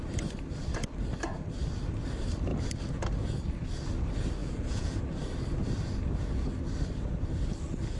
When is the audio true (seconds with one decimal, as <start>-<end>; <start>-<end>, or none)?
0.0-4.4; 5.0-8.0